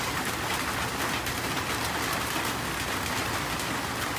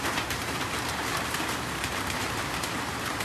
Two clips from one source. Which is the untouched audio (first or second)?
first